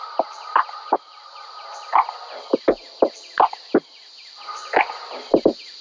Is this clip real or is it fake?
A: real